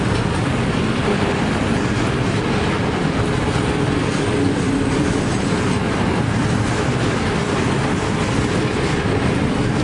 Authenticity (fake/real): real